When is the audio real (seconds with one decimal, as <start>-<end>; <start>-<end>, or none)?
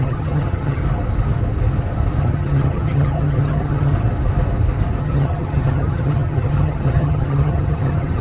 0.8-2.2; 3.9-5.0